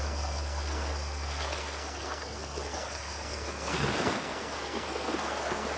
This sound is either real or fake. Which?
fake